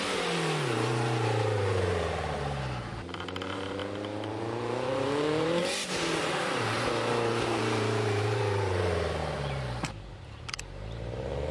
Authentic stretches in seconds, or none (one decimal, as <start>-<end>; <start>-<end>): none